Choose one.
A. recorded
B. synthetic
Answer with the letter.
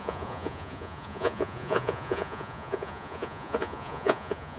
B